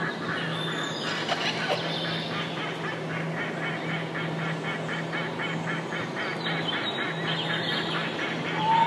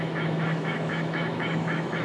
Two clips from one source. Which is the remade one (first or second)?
second